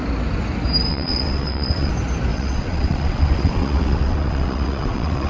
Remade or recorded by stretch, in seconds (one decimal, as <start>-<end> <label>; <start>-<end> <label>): 0.0-0.9 recorded; 0.9-1.9 remade; 1.9-2.3 recorded; 2.3-5.3 remade